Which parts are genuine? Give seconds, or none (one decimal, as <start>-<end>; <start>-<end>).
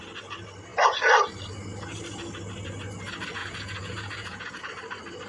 0.0-3.4; 4.6-5.3